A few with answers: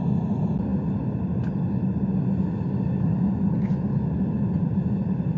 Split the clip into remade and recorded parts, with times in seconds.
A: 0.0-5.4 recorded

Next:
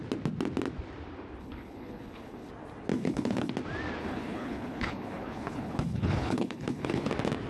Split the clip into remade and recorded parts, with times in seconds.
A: 0.0-1.4 recorded; 1.4-2.5 remade; 2.5-2.9 recorded; 2.9-3.5 remade; 3.5-4.0 recorded; 4.0-7.1 remade; 7.1-7.5 recorded

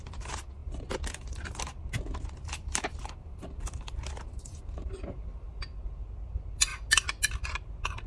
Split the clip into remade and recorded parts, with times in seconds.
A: 0.0-8.1 recorded

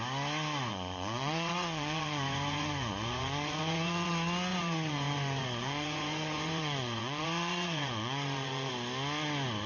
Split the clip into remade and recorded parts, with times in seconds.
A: 0.0-0.7 recorded; 0.7-4.1 remade; 4.1-4.5 recorded; 4.5-8.7 remade; 8.7-9.7 recorded